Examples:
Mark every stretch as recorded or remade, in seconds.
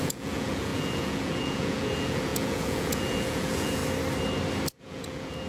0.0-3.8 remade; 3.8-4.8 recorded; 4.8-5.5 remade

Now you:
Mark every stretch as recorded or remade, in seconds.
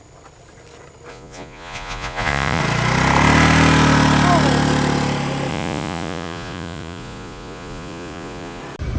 0.0-1.1 recorded; 1.1-2.6 remade; 2.6-5.5 recorded; 5.5-8.6 remade; 8.6-9.0 recorded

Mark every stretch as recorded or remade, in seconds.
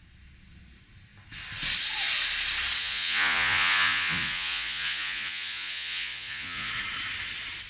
0.0-2.8 recorded; 2.8-6.7 remade; 6.7-7.7 recorded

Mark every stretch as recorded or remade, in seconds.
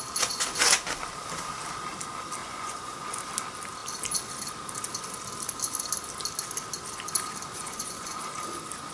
0.0-2.4 recorded; 2.4-3.2 remade; 3.2-7.5 recorded; 7.5-8.2 remade; 8.2-8.9 recorded